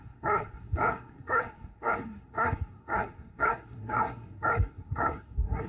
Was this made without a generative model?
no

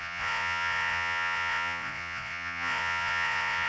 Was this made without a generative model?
no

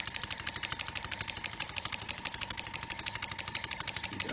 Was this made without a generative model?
no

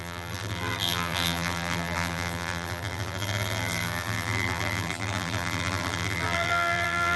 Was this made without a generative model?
no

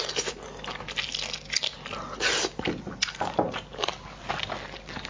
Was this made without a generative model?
yes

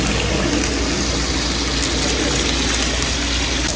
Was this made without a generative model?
yes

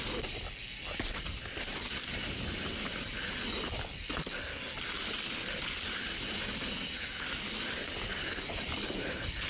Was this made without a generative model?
yes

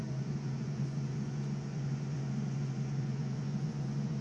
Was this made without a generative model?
no